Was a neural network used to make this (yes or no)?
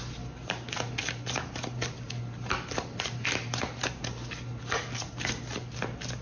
no